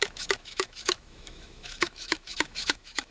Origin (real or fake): fake